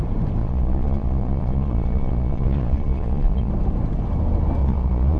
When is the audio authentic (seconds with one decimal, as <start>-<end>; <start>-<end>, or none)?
0.0-0.4; 3.5-4.6